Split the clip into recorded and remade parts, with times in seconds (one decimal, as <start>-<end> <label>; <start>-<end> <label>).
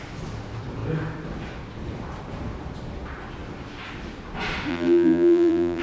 0.0-4.7 recorded; 4.7-5.8 remade